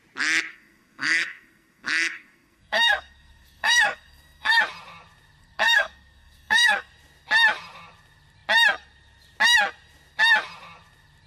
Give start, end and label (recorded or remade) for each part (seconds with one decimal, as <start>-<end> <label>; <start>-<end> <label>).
0.0-0.5 recorded; 0.5-4.6 remade; 4.6-5.4 recorded; 5.4-6.9 remade; 6.9-11.3 recorded